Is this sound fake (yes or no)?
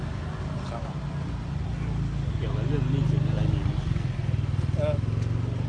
no